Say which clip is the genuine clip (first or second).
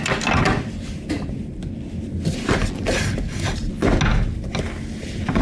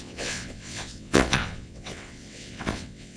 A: first